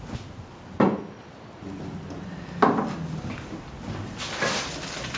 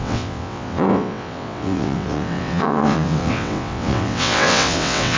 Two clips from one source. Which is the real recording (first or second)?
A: first